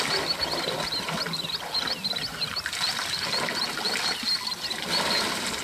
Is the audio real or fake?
real